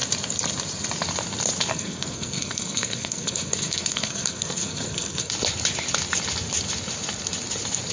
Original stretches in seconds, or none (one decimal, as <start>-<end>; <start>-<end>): 0.0-1.7; 5.3-7.9